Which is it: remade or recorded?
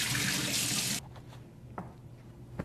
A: recorded